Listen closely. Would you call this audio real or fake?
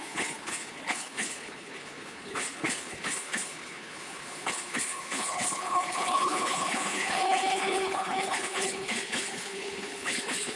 fake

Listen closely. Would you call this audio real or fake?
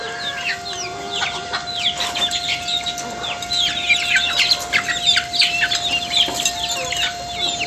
real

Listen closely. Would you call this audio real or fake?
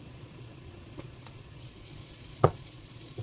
fake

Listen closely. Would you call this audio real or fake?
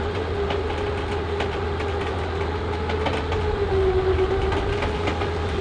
real